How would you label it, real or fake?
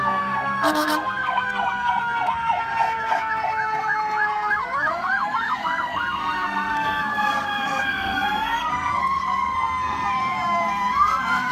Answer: fake